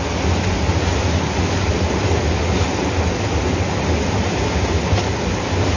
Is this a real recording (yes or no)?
yes